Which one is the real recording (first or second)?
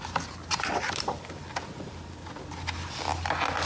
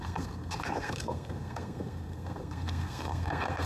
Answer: first